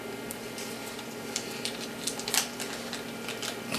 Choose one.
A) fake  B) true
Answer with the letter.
A